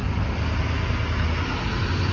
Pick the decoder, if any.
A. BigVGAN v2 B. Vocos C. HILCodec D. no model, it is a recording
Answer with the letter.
D